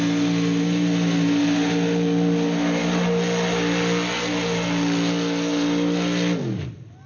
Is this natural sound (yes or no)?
yes